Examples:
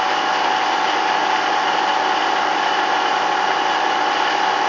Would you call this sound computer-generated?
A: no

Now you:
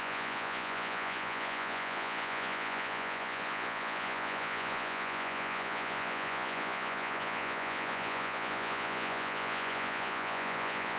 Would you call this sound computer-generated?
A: yes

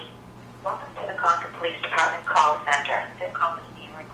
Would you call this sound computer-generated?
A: no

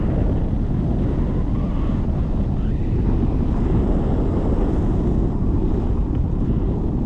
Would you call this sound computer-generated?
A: no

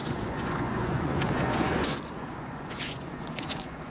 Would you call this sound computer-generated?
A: yes